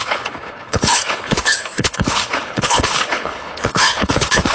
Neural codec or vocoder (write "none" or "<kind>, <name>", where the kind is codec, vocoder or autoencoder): codec, HILCodec